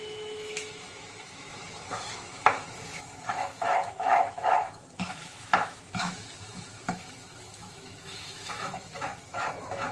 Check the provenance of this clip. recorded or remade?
remade